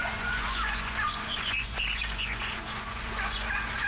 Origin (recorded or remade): remade